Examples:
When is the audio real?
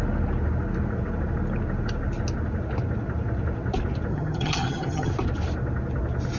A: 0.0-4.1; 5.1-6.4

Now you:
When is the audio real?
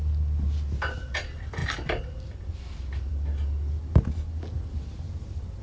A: 0.0-5.6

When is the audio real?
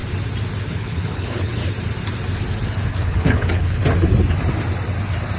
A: 0.0-0.7; 1.6-2.9; 3.8-5.4